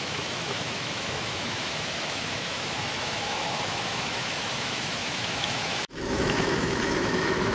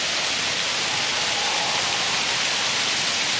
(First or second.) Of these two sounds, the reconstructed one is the first